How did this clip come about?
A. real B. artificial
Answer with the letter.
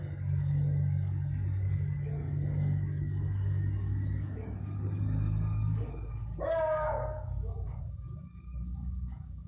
B